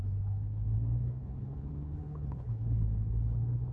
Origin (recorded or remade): remade